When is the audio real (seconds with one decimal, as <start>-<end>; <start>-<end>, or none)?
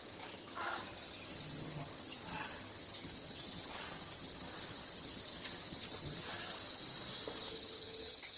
6.8-7.5